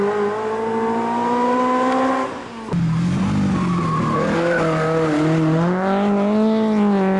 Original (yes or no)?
yes